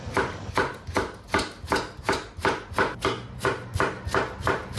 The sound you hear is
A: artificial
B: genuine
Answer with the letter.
B